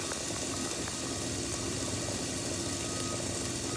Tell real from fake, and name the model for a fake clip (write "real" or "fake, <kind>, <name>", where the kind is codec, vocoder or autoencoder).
real